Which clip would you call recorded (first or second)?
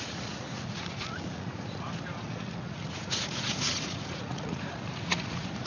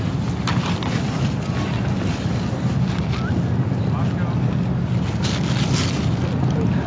second